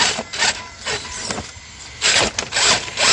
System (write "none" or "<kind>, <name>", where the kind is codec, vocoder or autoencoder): none